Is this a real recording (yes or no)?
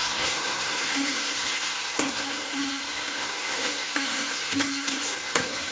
no